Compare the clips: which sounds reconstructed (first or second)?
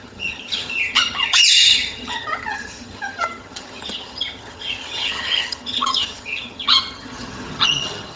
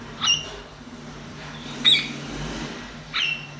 first